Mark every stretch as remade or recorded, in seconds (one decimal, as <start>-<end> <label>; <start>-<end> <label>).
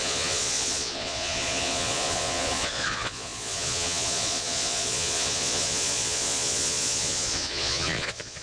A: 0.0-8.4 remade